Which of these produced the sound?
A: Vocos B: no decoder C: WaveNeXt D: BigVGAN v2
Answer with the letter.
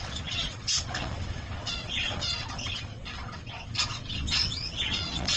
C